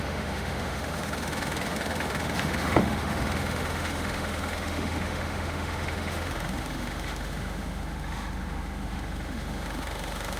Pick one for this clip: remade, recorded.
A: remade